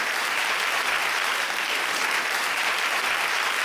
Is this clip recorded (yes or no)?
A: no